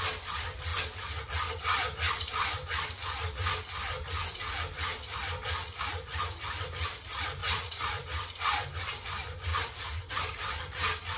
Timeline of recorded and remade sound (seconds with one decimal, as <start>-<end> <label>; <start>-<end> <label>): 0.0-7.4 recorded; 7.4-7.9 remade; 7.9-11.2 recorded